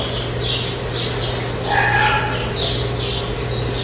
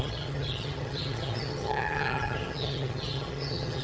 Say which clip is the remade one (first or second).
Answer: second